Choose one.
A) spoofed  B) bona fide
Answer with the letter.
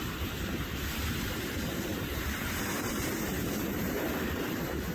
A